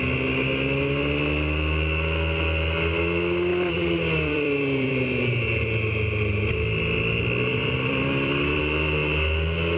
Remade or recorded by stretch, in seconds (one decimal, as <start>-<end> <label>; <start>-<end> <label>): 0.0-3.5 recorded; 3.5-4.9 remade; 4.9-7.5 recorded; 7.5-8.6 remade; 8.6-9.8 recorded